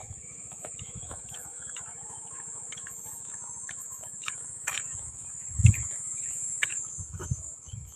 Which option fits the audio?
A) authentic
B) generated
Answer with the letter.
B